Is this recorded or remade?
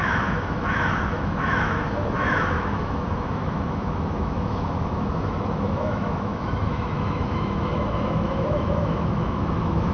remade